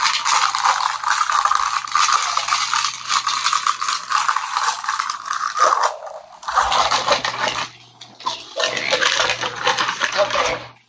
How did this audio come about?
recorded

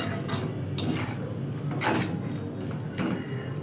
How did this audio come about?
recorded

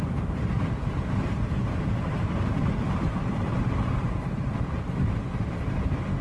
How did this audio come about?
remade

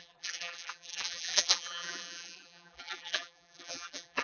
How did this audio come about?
remade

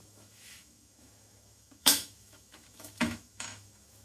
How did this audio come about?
remade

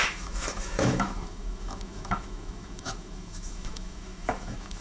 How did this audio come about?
remade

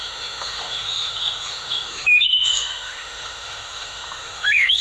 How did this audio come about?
remade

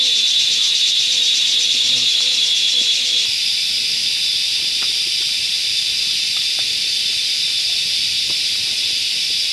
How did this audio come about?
remade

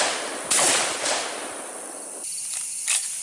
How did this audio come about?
remade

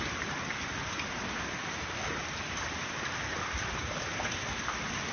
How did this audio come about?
recorded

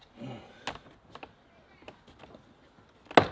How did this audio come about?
recorded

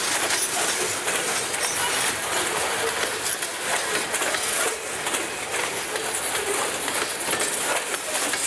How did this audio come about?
recorded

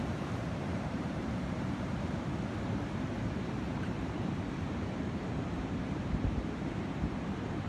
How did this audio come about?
remade